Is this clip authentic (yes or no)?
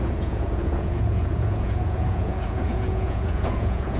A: no